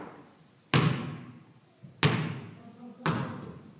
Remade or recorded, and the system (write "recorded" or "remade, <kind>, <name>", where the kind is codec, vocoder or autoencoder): recorded